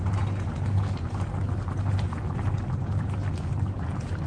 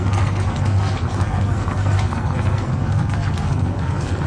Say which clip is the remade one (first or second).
second